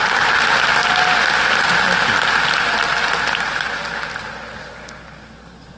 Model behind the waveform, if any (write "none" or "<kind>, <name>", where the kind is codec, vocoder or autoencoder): none